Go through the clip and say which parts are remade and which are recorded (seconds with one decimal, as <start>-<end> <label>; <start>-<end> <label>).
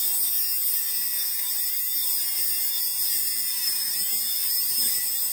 0.0-2.0 recorded; 2.0-5.3 remade